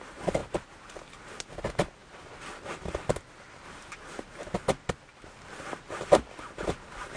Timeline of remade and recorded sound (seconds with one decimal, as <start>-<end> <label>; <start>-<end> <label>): 0.0-7.2 recorded